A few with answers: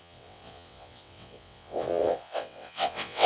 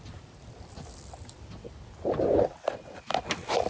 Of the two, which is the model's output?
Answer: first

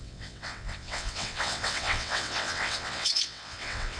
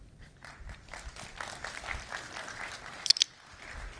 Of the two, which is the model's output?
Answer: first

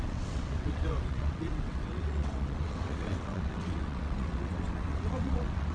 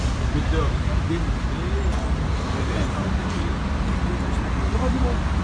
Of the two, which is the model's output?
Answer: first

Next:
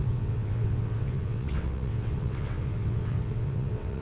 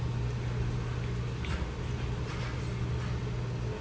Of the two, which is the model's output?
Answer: first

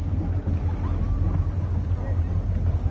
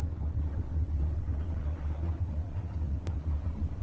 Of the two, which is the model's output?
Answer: second